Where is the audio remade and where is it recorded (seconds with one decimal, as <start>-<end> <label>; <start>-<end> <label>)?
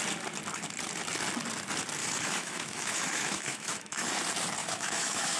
0.0-2.0 recorded; 2.0-4.1 remade; 4.1-4.6 recorded; 4.6-5.4 remade